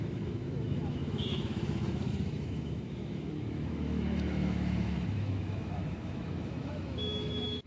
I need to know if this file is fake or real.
fake